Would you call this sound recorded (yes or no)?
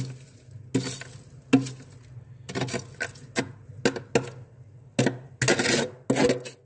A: yes